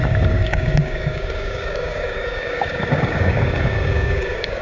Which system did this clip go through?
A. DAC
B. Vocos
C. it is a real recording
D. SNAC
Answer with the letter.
A